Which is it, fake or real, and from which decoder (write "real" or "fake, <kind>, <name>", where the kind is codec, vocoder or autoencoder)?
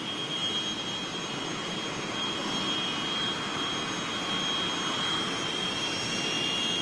real